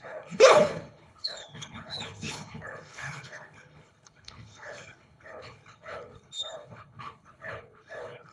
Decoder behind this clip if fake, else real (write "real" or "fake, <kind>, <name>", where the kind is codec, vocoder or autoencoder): fake, codec, HILCodec